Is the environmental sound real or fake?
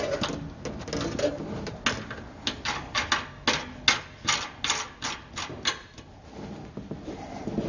real